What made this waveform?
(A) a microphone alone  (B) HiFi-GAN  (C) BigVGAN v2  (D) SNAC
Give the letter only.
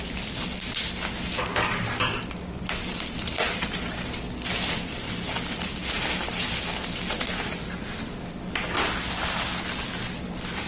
A